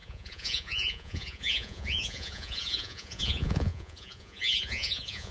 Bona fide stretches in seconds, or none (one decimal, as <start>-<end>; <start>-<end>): none